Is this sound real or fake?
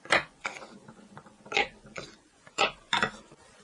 fake